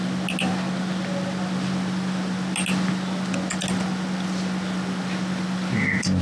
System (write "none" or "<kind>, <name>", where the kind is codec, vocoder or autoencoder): none